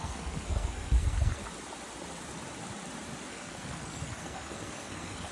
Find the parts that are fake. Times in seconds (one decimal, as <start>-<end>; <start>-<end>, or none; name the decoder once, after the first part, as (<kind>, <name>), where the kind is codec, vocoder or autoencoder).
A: 0.0-1.4 (codec, SNAC); 3.3-5.3